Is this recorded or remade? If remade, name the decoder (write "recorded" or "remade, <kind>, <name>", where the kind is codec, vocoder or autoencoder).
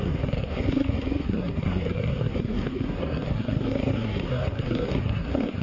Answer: remade, codec, SNAC